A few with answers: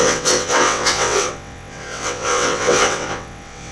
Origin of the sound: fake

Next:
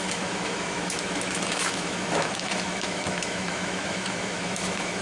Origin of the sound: fake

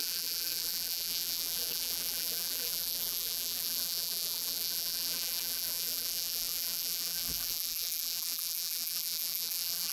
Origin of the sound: fake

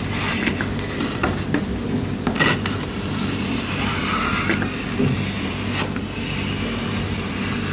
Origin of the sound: real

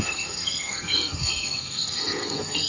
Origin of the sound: fake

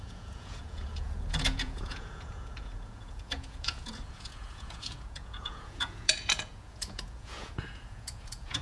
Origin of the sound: fake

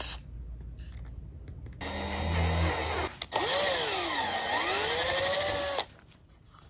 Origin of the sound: real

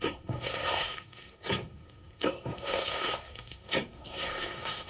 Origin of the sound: fake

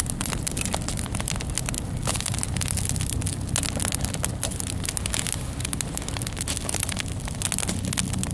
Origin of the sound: real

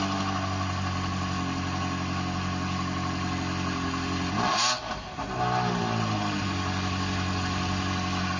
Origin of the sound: real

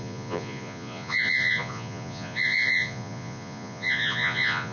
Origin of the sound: fake